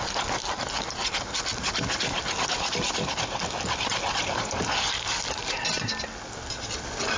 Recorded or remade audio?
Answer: recorded